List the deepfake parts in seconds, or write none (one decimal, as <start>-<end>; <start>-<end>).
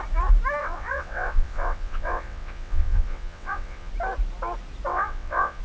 0.6-3.9; 4.9-5.6